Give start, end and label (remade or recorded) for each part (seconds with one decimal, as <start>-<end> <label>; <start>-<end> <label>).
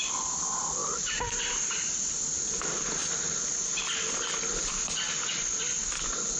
0.0-6.4 recorded